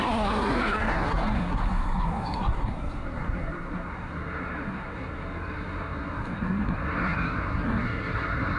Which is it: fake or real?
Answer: fake